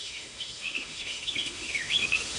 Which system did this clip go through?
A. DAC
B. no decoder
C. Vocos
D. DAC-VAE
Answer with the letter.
D